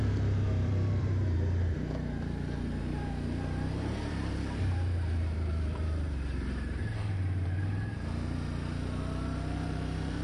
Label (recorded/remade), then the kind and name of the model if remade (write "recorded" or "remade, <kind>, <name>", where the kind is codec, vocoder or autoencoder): remade, vocoder, BigVGAN v2